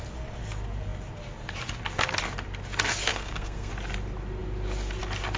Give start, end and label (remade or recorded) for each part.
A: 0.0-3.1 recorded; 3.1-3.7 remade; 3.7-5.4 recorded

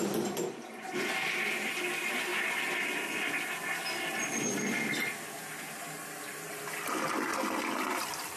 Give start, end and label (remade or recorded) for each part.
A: 0.0-8.4 recorded

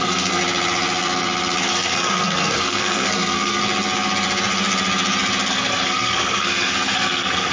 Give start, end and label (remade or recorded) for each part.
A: 0.0-0.4 remade; 0.4-1.6 recorded; 1.6-3.6 remade; 3.6-5.5 recorded; 5.5-7.5 remade

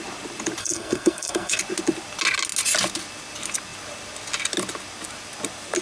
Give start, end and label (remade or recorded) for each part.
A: 0.0-0.6 recorded; 0.6-1.6 remade; 1.6-5.8 recorded

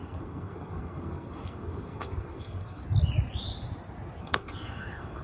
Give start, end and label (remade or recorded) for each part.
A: 0.0-2.8 remade; 2.8-4.2 recorded; 4.2-5.2 remade

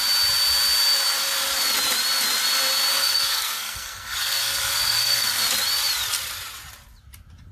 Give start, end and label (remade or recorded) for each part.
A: 0.0-2.9 recorded; 2.9-5.4 remade; 5.4-7.5 recorded